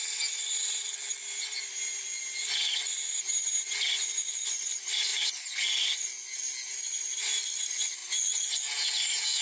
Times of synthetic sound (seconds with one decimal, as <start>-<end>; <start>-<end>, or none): none